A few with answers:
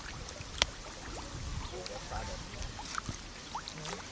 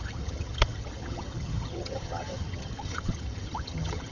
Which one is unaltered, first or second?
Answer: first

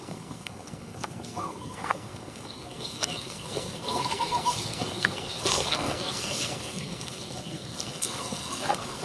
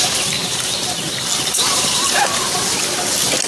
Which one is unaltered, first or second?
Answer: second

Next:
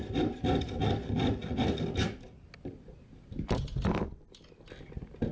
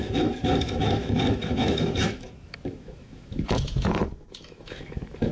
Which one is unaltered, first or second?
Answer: first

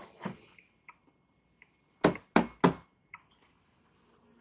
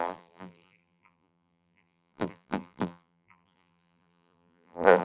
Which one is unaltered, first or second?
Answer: first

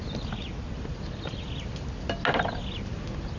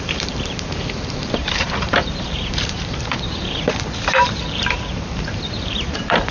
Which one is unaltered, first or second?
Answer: first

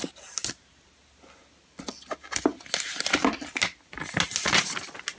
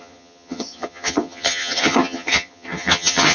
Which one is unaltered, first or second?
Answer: first